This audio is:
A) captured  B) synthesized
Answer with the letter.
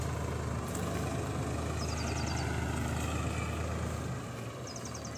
A